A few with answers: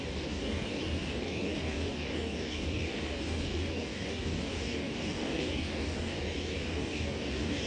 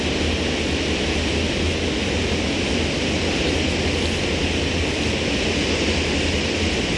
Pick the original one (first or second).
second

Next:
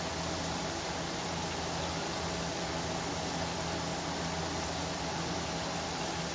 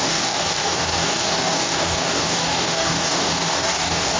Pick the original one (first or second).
first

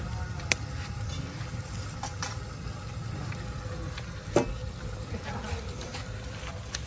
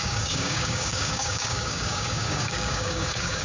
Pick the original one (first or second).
first